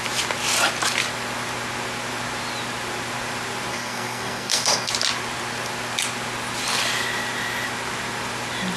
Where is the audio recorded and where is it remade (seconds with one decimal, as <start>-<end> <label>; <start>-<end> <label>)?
0.0-3.7 recorded; 3.7-4.9 remade; 4.9-8.8 recorded